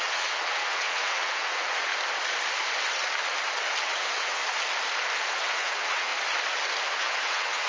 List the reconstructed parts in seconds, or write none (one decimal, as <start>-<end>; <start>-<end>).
0.0-1.9; 3.8-4.4; 5.3-6.1; 7.0-7.7

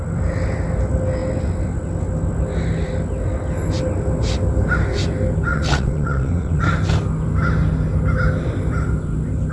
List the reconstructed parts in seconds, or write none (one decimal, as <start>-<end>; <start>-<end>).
5.5-6.6

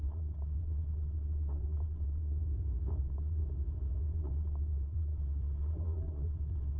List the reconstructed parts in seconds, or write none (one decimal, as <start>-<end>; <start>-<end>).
0.0-2.4; 3.0-3.4; 4.0-6.8

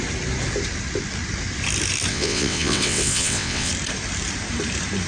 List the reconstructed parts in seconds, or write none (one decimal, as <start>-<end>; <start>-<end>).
2.1-3.7